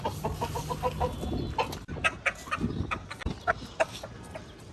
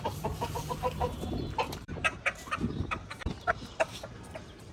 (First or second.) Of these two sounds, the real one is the first